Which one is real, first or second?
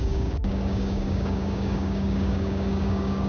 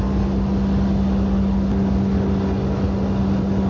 second